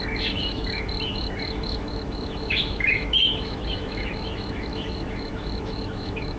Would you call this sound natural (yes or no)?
no